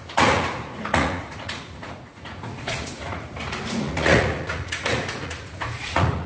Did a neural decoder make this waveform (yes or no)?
yes